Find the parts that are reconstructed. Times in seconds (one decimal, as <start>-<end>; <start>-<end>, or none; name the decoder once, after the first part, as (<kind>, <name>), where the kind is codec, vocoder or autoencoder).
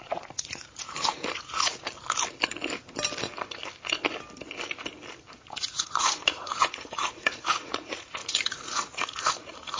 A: 0.0-1.7 (vocoder, Vocos); 5.3-9.8